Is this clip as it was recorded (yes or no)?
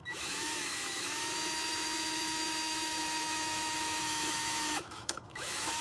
no